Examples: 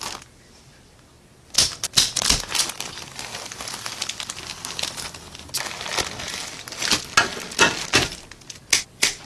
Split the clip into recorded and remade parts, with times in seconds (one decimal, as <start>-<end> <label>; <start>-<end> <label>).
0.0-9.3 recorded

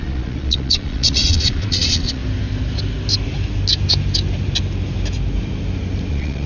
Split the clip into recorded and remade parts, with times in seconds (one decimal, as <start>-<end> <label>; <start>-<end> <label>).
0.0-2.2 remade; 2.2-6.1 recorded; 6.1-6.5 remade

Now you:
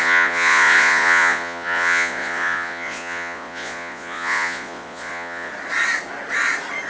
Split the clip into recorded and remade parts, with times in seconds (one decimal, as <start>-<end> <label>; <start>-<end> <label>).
0.0-5.5 remade; 5.5-6.9 recorded

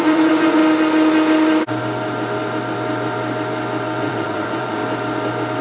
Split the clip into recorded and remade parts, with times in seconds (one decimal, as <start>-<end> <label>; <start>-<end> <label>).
0.0-0.6 remade; 0.6-4.0 recorded; 4.0-4.8 remade; 4.8-5.6 recorded

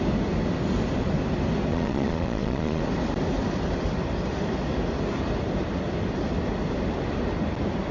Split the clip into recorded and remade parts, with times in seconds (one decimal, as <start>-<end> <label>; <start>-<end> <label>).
0.0-1.7 recorded; 1.7-2.8 remade; 2.8-7.9 recorded